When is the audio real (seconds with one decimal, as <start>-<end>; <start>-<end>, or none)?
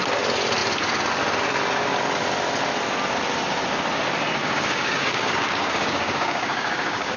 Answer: 0.0-4.4